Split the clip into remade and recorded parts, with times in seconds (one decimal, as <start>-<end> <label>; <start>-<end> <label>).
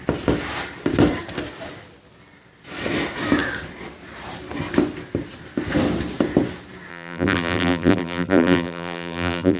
0.0-6.9 recorded; 6.9-9.6 remade